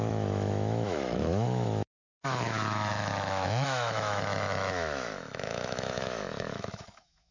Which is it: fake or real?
fake